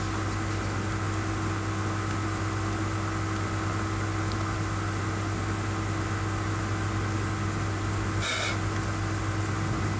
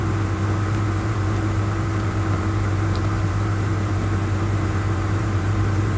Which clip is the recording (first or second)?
first